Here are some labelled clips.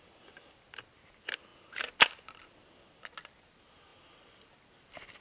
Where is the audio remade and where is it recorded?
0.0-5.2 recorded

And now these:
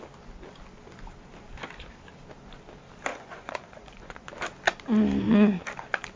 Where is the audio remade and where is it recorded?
0.0-3.1 recorded; 3.1-4.3 remade; 4.3-6.2 recorded

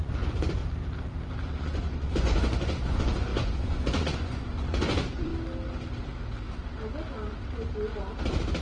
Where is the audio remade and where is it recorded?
0.0-0.6 remade; 0.6-1.5 recorded; 1.5-5.3 remade; 5.3-8.6 recorded

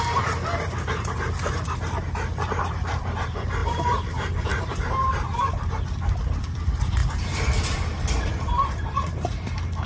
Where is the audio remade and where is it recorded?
0.0-3.6 recorded; 3.6-5.5 remade; 5.5-7.0 recorded; 7.0-9.5 remade; 9.5-9.9 recorded

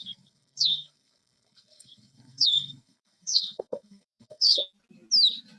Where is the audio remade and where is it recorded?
0.0-4.6 remade; 4.6-5.6 recorded

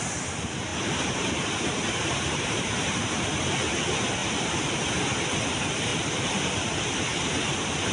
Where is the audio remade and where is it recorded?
0.0-0.7 recorded; 0.7-3.1 remade; 3.1-5.9 recorded; 5.9-7.9 remade